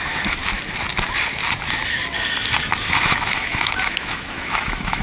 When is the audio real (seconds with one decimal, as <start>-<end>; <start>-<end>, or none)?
0.4-2.8